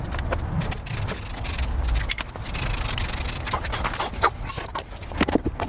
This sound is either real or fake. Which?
real